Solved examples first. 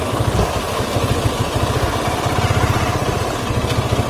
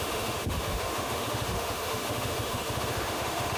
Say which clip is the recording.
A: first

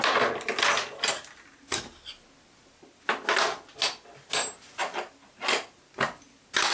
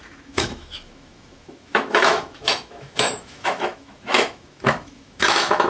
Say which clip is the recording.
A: first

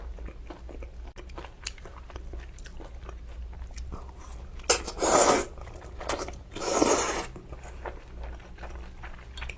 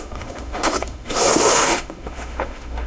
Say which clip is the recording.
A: first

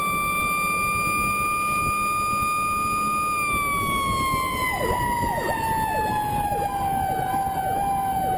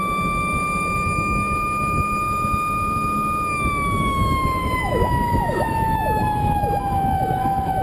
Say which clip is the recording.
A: first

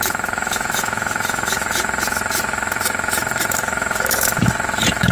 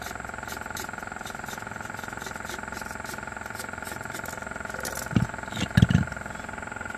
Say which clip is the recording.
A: second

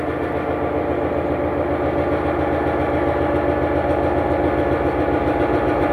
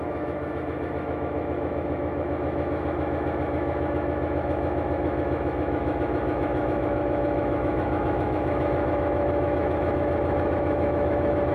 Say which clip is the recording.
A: first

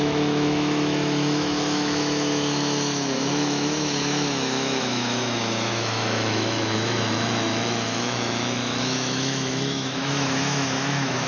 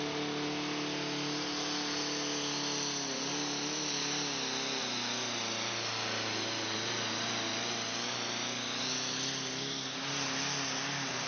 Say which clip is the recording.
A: second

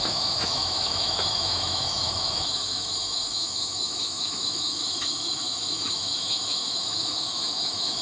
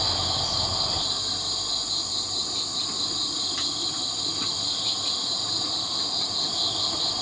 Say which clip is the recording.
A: second